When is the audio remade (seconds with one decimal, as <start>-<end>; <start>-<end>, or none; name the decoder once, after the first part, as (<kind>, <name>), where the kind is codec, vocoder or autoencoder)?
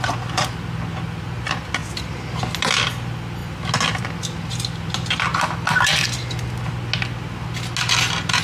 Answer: none